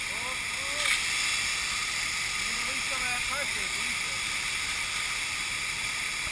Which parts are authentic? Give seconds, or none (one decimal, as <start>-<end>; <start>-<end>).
0.0-3.1; 3.8-6.3